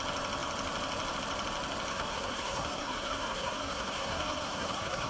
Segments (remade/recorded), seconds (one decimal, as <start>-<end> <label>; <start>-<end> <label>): 0.0-1.9 recorded; 1.9-5.1 remade